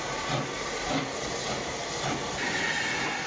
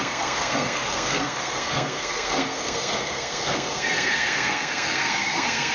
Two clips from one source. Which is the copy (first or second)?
second